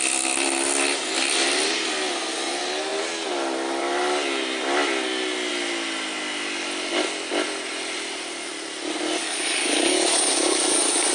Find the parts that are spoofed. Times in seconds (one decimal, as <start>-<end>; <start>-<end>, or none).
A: 9.2-11.1